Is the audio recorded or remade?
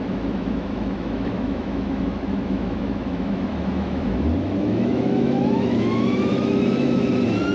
remade